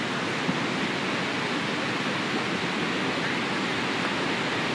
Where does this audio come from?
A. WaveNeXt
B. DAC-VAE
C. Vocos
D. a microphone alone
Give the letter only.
D